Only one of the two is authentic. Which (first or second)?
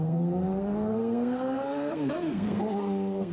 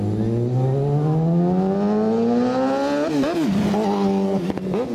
second